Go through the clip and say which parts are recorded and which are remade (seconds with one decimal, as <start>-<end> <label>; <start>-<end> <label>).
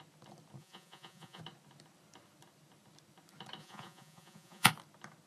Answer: 0.0-0.6 recorded; 0.6-1.4 remade; 1.4-3.6 recorded; 3.6-4.7 remade; 4.7-5.3 recorded